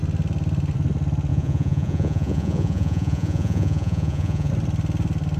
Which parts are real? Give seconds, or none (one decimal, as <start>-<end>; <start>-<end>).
0.0-1.3; 4.5-5.4